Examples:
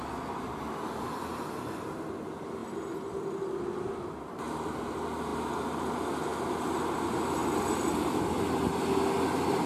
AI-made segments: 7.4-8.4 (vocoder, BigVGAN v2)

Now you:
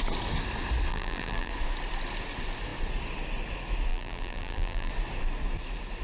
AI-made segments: 0.9-1.5 (vocoder, BigVGAN v2); 3.9-4.9

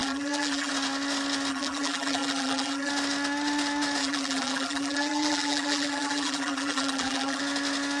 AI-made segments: 0.0-0.7 (vocoder, BigVGAN v2); 1.5-2.9; 4.0-7.4